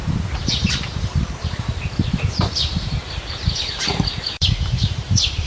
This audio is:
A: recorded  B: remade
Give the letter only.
B